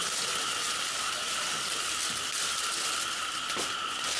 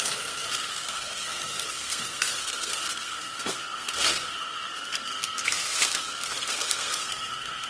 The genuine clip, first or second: first